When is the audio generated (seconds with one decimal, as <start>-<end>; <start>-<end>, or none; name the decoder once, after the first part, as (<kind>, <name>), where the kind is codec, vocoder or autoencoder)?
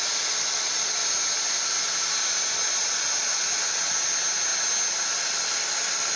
none